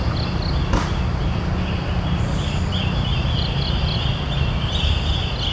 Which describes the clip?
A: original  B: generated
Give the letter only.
A